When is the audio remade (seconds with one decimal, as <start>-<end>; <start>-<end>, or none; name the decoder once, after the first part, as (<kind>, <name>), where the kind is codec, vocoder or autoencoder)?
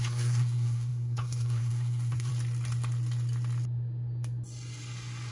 0.0-2.3 (codec, SNAC)